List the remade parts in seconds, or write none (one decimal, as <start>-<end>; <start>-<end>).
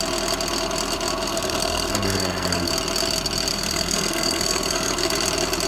1.3-2.7; 3.5-5.1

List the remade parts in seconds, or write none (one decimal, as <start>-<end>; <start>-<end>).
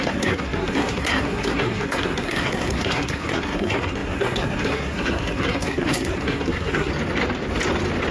0.0-6.9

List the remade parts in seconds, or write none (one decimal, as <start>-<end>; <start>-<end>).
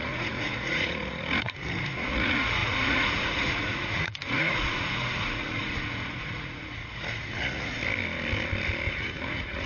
0.0-7.8; 8.9-9.7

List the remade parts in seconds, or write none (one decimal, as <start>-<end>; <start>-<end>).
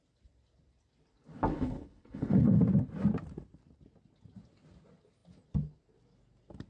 1.5-2.6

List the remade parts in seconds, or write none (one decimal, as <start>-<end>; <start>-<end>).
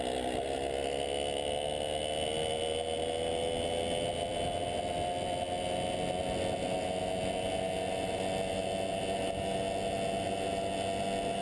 none